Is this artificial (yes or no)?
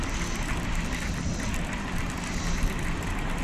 no